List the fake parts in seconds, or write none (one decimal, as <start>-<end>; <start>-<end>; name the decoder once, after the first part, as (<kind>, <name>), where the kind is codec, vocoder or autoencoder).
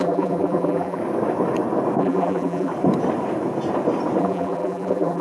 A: 0.0-1.0 (vocoder, BigVGAN v2); 2.0-2.7; 4.2-5.2